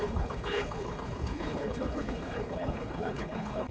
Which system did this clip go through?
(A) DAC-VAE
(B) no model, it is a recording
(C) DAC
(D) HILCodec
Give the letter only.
D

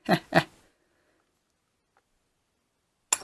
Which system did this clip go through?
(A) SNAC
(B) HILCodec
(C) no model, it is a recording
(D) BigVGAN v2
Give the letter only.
C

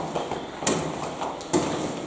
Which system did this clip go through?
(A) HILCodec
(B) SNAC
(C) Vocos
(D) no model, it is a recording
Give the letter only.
D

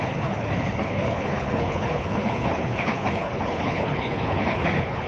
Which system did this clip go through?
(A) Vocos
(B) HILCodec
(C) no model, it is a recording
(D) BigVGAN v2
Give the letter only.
B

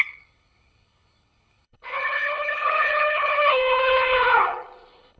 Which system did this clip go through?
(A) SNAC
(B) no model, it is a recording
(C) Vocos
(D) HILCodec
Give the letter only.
D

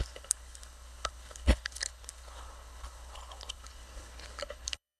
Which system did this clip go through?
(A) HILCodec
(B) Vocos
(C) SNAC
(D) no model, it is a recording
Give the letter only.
A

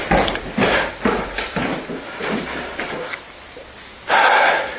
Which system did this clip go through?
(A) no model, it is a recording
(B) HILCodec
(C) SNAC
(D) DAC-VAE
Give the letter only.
A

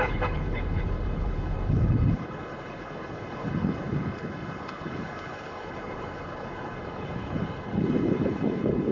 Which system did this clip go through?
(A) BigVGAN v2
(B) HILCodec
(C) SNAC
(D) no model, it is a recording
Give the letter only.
B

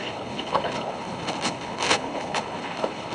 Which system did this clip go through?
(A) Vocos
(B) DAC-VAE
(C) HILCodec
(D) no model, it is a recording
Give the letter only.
C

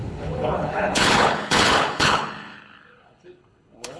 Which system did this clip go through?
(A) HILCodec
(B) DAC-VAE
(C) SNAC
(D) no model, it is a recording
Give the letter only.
A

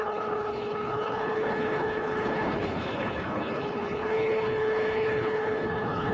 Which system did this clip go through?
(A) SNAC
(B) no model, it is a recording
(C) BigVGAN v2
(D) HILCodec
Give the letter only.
D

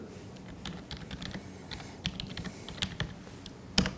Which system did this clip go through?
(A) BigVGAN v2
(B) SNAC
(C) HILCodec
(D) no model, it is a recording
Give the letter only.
D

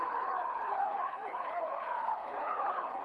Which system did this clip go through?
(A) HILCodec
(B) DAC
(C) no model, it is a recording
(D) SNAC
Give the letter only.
A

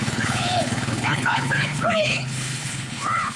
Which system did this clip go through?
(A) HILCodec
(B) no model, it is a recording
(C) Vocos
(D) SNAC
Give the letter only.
A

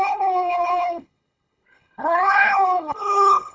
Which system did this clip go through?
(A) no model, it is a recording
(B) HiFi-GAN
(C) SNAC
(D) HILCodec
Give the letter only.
D